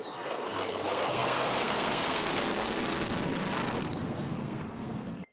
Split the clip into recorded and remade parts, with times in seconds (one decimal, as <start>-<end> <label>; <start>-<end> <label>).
0.0-5.3 remade